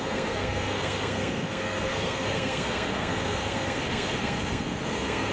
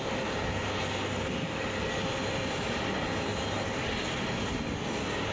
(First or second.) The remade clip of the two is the first